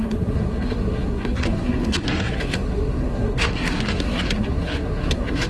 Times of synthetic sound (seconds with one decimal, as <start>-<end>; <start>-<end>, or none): 0.0-5.5